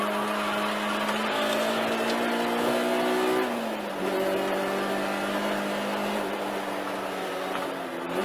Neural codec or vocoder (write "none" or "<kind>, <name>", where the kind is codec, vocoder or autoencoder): none